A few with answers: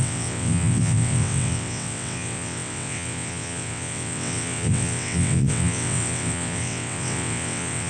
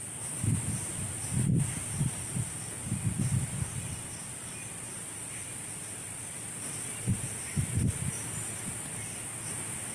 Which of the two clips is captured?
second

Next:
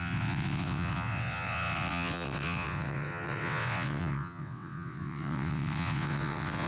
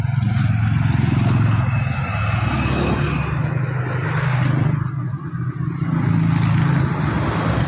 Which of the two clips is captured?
second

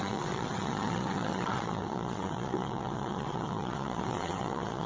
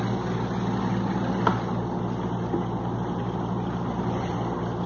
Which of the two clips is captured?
second